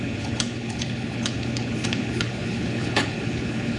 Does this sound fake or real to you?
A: fake